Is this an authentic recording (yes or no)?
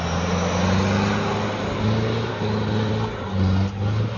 yes